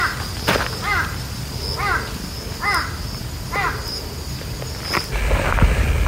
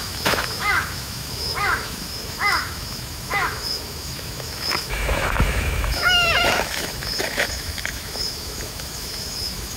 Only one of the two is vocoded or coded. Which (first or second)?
second